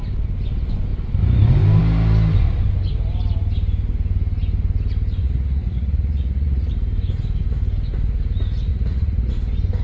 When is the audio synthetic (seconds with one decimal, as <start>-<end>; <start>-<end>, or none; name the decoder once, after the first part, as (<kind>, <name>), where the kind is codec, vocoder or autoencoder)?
5.2-6.7 (vocoder, Vocos); 8.7-9.3